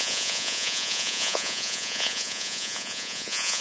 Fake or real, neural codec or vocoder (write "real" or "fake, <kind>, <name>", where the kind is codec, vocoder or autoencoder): fake, vocoder, Vocos